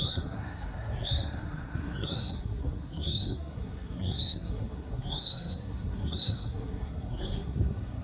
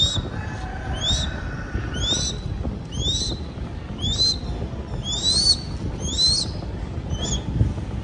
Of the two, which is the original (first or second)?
second